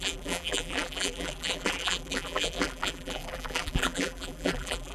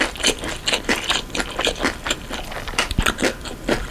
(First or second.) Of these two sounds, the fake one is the first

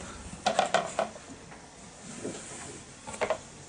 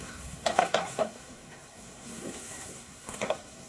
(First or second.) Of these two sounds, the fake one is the second